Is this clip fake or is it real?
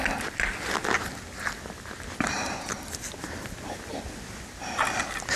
real